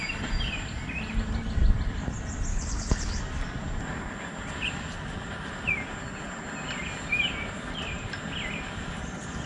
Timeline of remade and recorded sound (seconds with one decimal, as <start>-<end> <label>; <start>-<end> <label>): 0.0-2.5 recorded; 2.5-3.2 remade; 3.2-9.5 recorded